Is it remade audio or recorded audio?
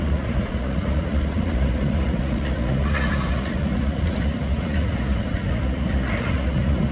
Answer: remade